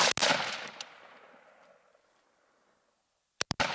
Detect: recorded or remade recorded